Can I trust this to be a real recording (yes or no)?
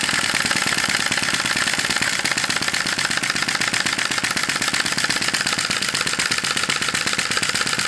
yes